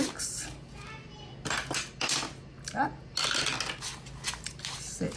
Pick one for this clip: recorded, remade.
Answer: recorded